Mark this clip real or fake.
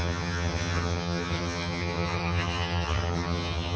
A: fake